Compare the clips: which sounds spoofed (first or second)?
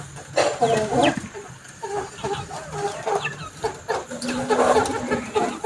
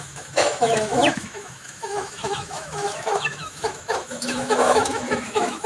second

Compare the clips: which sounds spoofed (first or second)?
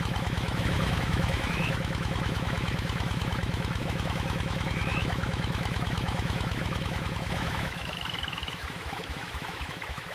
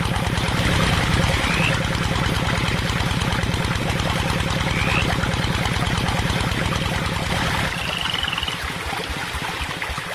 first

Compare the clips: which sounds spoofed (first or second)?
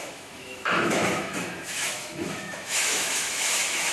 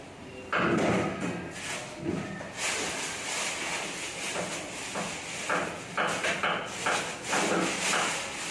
first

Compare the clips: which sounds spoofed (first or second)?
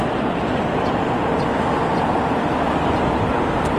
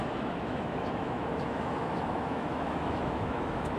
second